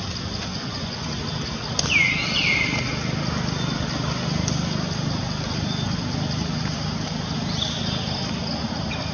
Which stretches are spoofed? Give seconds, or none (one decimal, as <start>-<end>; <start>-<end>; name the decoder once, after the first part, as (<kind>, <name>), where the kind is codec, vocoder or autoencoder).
0.5-1.2 (vocoder, Vocos)